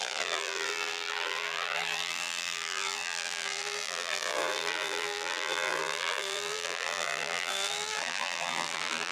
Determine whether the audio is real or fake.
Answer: fake